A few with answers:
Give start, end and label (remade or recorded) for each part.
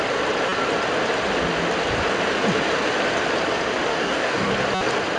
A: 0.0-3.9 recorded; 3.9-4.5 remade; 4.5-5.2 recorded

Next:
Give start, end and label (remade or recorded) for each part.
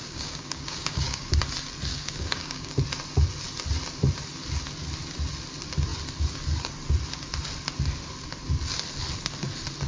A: 0.0-1.3 remade; 1.3-1.9 recorded; 1.9-2.8 remade; 2.8-9.9 recorded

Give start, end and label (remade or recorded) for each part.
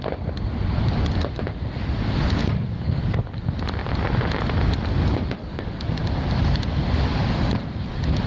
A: 0.0-2.4 recorded; 2.4-3.4 remade; 3.4-5.4 recorded; 5.4-6.0 remade; 6.0-8.3 recorded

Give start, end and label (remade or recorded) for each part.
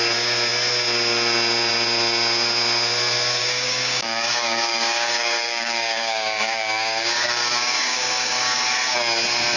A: 0.0-3.4 recorded; 3.4-8.6 remade; 8.6-9.6 recorded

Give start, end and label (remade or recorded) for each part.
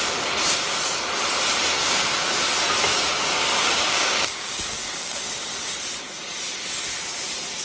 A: 0.0-1.8 recorded; 1.8-2.4 remade; 2.4-2.9 recorded; 2.9-5.2 remade; 5.2-7.6 recorded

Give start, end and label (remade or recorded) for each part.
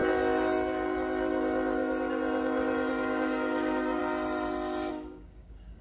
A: 0.0-2.9 recorded; 2.9-4.0 remade; 4.0-4.9 recorded; 4.9-5.8 remade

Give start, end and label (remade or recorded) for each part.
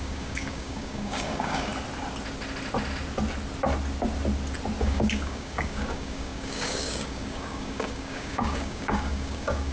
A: 0.0-1.7 remade; 1.7-4.8 recorded; 4.8-9.7 remade